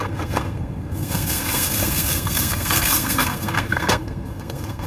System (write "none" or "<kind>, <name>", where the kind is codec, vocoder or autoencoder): codec, SNAC